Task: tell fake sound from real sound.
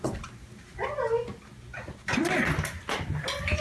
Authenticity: real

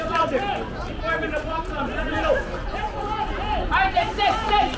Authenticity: real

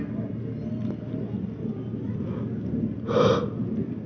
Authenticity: real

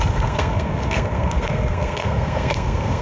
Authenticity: fake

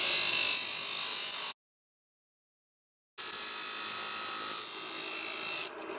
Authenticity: real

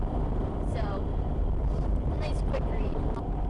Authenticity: fake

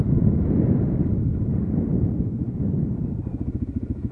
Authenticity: real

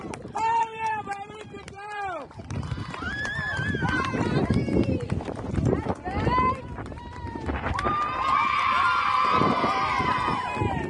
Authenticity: fake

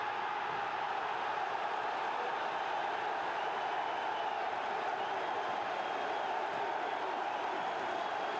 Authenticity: real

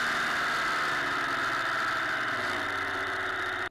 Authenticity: real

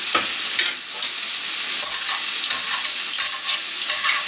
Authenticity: real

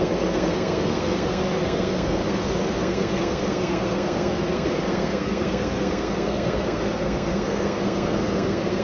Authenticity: fake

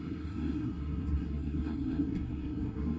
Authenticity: fake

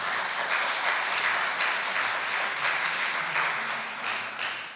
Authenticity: real